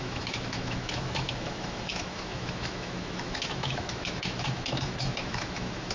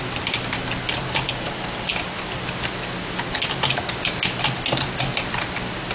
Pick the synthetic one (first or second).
first